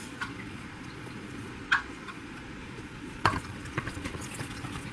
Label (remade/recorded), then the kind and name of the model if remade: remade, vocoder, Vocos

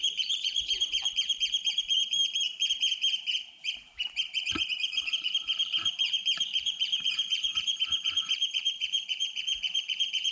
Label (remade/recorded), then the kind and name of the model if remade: remade, vocoder, BigVGAN v2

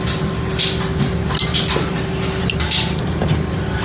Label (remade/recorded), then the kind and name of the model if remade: recorded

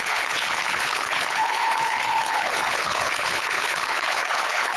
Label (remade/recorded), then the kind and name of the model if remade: remade, codec, HILCodec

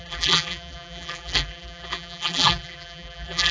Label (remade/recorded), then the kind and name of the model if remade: remade, vocoder, BigVGAN v2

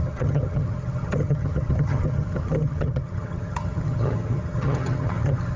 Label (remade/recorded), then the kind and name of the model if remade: remade, vocoder, HiFi-GAN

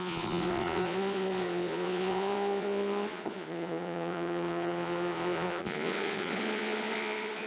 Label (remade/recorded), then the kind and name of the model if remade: remade, vocoder, Vocos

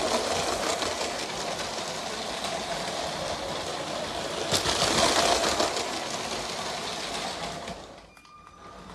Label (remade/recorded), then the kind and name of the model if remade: recorded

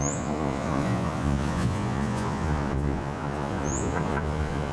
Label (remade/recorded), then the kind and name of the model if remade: remade, vocoder, Vocos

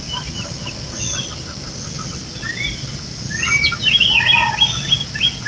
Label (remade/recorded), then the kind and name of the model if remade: recorded